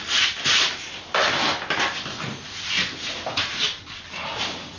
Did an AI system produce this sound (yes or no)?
no